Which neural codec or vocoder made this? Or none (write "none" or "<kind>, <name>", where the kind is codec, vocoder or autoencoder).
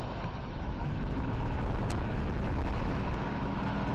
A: autoencoder, DAC-VAE